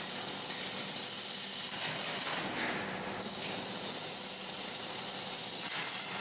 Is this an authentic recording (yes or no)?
yes